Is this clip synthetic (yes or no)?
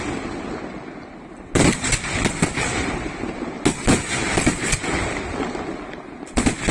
no